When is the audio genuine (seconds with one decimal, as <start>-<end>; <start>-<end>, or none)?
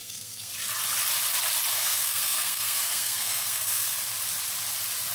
0.5-1.7; 4.0-5.1